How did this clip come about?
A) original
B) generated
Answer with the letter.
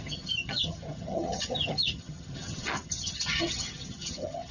B